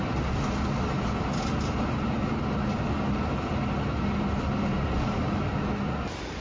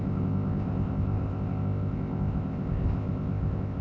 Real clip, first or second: first